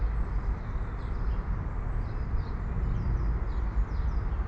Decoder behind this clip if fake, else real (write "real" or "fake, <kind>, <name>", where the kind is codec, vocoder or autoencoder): real